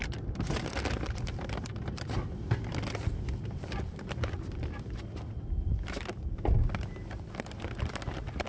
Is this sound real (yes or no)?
yes